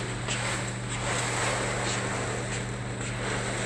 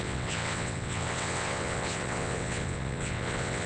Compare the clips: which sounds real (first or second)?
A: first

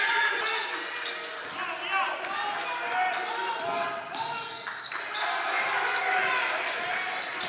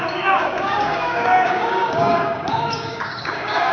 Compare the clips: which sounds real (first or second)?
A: first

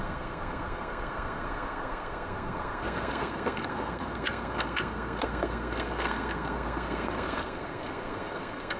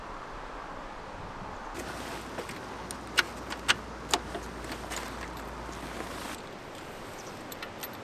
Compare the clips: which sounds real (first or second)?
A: second